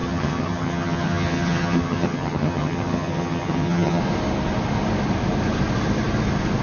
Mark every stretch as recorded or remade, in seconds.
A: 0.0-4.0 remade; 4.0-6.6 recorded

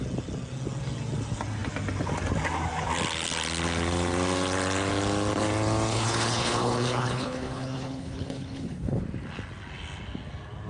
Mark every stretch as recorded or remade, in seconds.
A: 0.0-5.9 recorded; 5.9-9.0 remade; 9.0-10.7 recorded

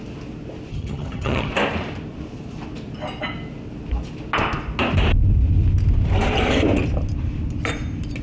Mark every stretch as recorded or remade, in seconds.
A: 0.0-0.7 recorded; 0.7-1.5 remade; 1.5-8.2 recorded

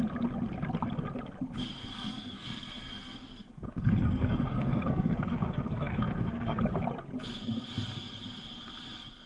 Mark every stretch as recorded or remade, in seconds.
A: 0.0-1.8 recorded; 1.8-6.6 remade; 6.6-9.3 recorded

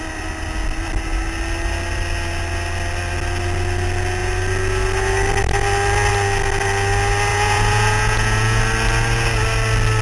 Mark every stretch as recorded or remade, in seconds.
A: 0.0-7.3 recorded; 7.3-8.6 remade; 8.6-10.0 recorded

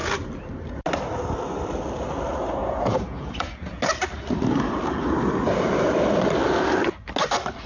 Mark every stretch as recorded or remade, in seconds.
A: 0.0-2.6 recorded; 2.6-3.8 remade; 3.8-7.7 recorded

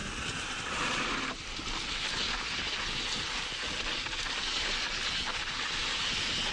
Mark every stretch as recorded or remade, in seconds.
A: 0.0-6.5 recorded